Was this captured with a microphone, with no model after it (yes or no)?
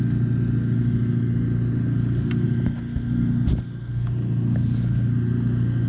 yes